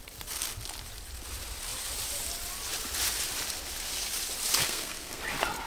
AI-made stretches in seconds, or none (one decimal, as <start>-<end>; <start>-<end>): 4.6-5.2